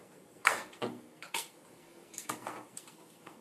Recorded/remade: remade